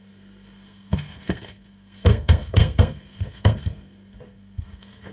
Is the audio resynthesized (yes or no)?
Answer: yes